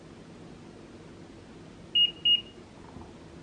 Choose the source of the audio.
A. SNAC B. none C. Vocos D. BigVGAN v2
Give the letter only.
B